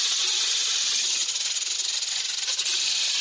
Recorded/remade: recorded